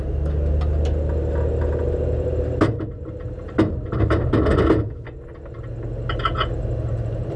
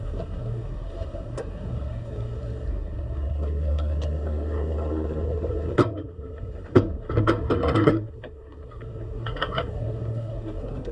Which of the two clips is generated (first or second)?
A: second